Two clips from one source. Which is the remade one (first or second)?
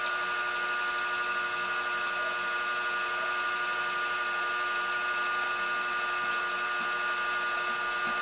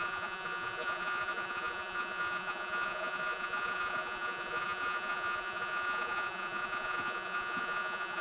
second